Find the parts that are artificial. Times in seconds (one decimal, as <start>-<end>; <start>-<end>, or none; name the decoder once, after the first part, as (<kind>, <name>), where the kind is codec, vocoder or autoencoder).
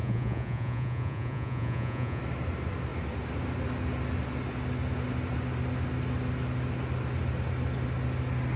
0.0-2.2 (vocoder, Vocos)